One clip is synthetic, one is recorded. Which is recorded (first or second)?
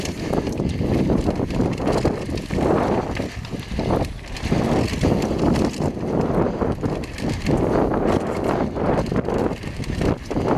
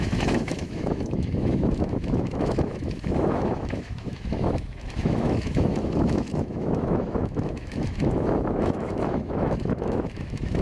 first